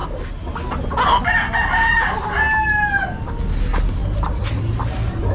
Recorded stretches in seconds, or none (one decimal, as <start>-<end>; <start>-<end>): 0.0-5.3